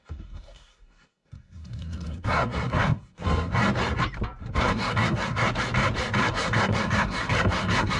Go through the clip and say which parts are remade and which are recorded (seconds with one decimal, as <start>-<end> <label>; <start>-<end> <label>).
0.0-3.5 remade; 3.5-4.4 recorded; 4.4-5.5 remade; 5.5-6.2 recorded; 6.2-8.0 remade